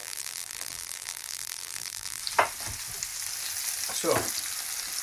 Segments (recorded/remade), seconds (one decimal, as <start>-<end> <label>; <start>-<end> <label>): 0.0-2.2 remade; 2.2-5.0 recorded